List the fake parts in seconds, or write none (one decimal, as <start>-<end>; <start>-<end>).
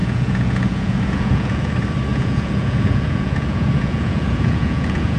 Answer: 0.0-1.7; 2.1-5.2